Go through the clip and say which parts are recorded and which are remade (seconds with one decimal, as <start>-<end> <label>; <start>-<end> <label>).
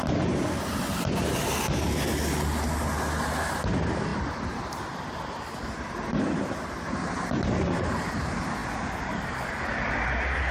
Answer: 0.0-10.5 recorded